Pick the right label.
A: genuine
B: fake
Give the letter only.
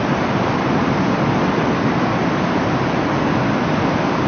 B